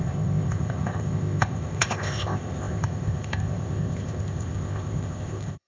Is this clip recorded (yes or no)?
no